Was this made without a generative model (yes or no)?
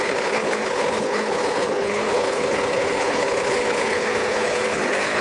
no